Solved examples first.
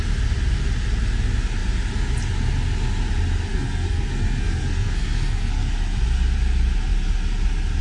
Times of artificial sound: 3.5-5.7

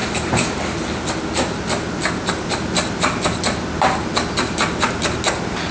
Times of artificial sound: none

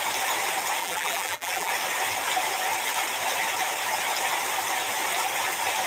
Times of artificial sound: 0.8-1.7

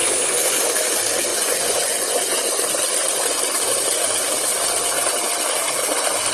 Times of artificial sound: 0.0-0.6; 1.3-2.4